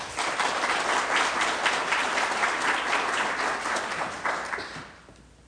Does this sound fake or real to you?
real